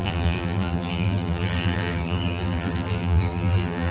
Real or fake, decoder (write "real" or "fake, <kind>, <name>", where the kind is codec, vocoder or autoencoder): fake, vocoder, BigVGAN v2